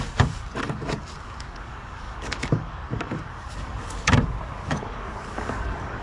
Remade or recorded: remade